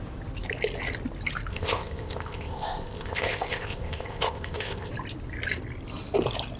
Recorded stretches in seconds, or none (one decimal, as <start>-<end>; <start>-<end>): 0.0-1.5; 4.9-6.6